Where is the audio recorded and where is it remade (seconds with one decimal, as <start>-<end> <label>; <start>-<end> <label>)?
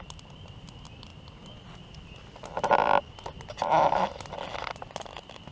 0.0-5.5 recorded